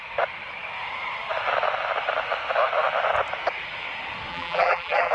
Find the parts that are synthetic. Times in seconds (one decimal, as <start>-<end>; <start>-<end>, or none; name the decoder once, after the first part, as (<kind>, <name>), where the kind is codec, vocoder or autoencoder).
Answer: 4.3-5.1 (vocoder, BigVGAN v2)